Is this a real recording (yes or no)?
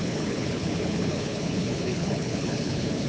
no